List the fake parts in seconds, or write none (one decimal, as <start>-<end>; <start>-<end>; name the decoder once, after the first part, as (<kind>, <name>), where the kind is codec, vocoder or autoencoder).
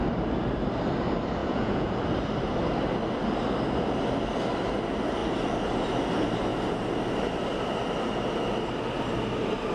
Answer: 1.4-2.0 (vocoder, Vocos)